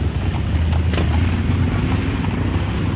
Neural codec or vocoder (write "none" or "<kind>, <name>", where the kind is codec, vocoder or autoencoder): none